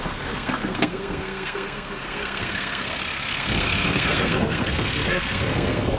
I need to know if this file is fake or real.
fake